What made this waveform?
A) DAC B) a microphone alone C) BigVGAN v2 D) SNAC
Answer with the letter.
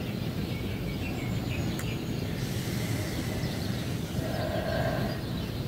B